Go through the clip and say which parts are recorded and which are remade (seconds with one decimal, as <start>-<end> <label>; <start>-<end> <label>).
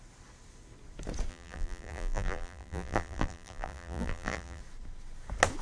0.0-1.3 recorded; 1.3-4.6 remade; 4.6-5.6 recorded